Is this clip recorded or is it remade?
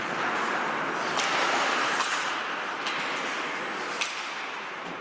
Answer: recorded